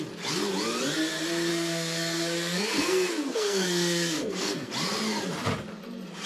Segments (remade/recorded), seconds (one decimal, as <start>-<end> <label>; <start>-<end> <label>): 0.0-1.5 recorded; 1.5-4.7 remade; 4.7-6.3 recorded